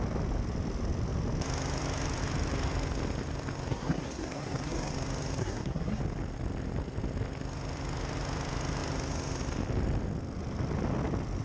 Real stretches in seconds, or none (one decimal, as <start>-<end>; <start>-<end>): 0.0-3.7; 4.9-5.4; 6.0-11.4